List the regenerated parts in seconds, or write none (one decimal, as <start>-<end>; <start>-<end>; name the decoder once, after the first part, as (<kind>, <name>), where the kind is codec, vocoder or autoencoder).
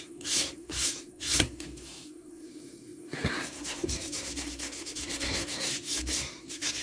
0.0-6.8 (codec, SNAC)